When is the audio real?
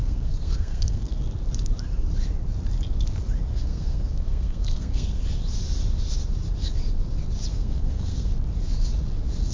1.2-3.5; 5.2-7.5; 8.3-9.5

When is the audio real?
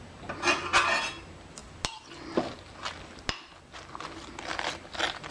0.0-5.3